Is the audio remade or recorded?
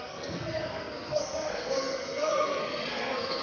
remade